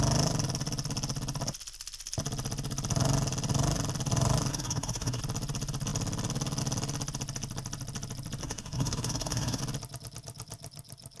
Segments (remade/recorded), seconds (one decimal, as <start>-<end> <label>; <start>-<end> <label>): 0.0-4.5 recorded; 4.5-5.2 remade; 5.2-8.4 recorded; 8.4-9.6 remade; 9.6-11.2 recorded